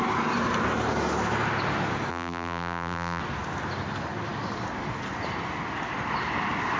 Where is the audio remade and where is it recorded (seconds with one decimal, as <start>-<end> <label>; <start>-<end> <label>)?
0.0-2.1 recorded; 2.1-3.2 remade; 3.2-6.8 recorded